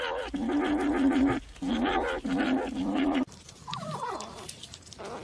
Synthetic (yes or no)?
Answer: no